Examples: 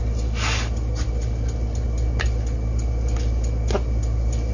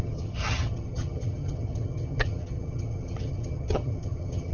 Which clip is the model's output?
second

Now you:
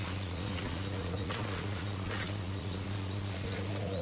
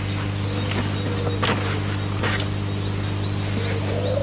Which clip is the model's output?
first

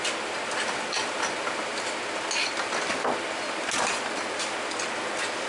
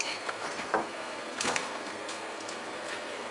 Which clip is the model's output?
second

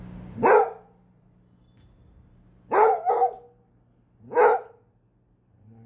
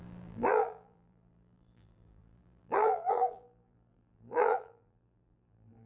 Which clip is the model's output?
second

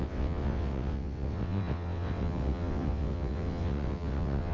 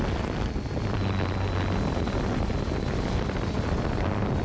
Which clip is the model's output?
first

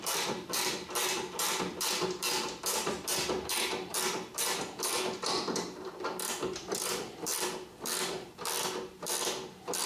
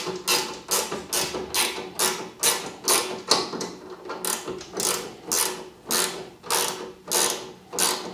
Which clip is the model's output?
first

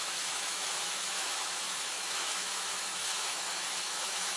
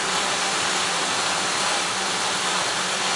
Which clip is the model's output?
first